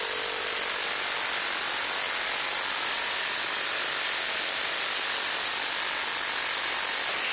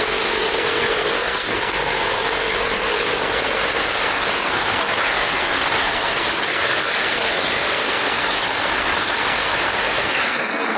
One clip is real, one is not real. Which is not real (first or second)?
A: second